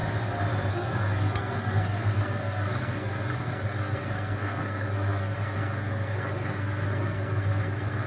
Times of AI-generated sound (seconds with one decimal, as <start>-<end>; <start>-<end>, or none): 0.7-8.1